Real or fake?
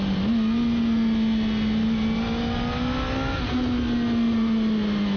real